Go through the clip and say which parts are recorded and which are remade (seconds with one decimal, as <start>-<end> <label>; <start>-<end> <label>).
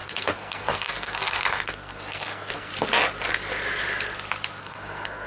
0.0-2.7 remade; 2.7-4.6 recorded; 4.6-5.3 remade